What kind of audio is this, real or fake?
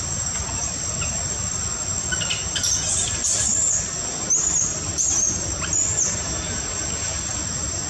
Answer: real